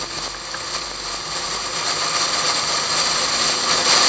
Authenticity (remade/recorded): recorded